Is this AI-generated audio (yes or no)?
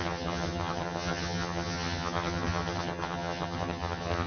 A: yes